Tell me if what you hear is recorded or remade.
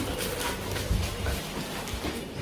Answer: recorded